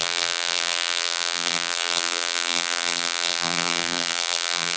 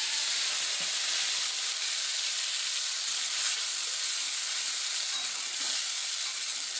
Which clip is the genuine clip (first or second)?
second